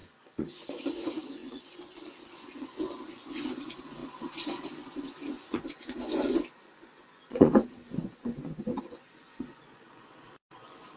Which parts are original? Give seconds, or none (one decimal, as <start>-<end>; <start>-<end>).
none